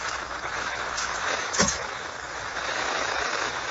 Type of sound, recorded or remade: remade